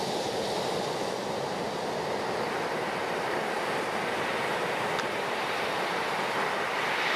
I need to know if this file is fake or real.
real